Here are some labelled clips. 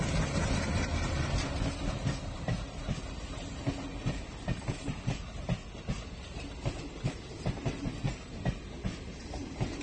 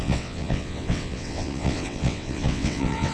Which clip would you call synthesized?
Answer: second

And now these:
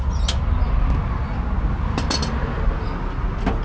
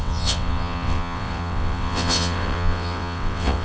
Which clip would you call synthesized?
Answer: second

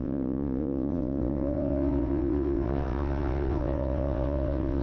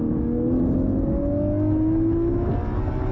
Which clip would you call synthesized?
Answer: first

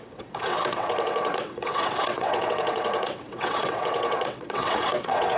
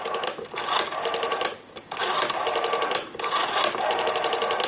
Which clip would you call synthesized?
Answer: first